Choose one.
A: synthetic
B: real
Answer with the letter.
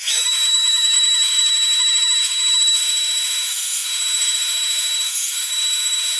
A